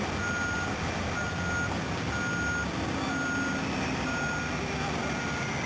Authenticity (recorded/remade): recorded